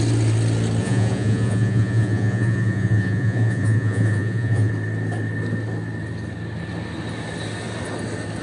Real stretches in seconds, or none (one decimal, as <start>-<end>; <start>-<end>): 0.0-0.8; 4.7-8.4